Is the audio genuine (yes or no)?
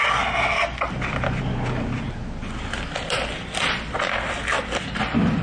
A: yes